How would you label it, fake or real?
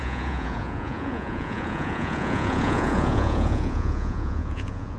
fake